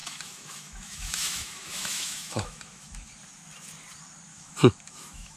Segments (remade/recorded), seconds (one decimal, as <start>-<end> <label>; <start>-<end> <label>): 0.0-3.1 remade; 3.1-4.3 recorded; 4.3-5.4 remade